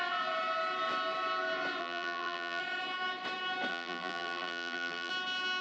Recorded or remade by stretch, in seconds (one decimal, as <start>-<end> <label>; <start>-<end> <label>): 0.0-1.8 recorded; 1.8-2.6 remade; 2.6-3.7 recorded; 3.7-5.1 remade; 5.1-5.6 recorded